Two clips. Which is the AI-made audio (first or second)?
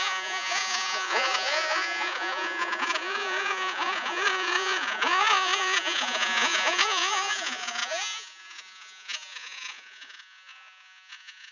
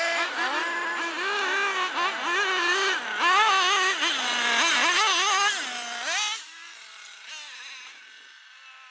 first